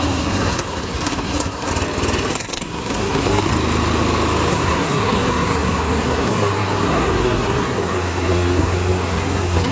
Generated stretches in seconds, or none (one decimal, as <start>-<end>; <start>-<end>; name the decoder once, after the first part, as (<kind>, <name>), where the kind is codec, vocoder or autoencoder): 0.0-1.7 (codec, SNAC); 2.3-3.5; 4.5-9.7